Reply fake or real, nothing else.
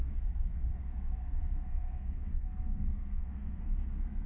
fake